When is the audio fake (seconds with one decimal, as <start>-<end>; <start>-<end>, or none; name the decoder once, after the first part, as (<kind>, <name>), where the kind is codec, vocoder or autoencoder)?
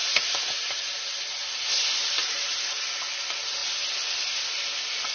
none